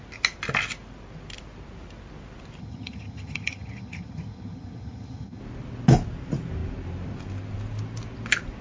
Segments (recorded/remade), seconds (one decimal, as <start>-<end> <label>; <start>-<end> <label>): 0.0-2.6 recorded; 2.6-5.4 remade; 5.4-8.6 recorded